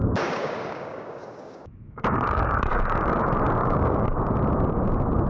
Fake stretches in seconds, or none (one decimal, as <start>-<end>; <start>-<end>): 0.0-3.2; 3.6-4.2